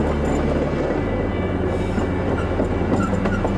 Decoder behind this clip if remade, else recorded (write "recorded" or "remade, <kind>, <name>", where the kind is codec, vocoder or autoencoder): recorded